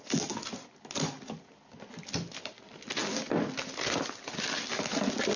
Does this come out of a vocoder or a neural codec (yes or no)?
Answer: no